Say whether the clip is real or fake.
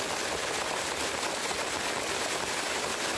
real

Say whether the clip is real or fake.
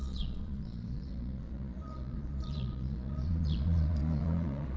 fake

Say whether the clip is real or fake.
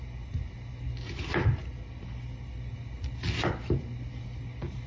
real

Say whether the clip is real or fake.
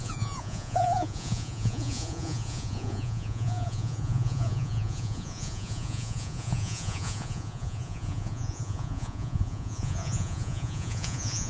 fake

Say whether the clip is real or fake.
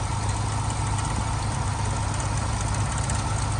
real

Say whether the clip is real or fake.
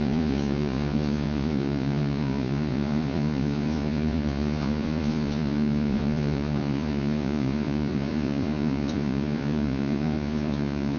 fake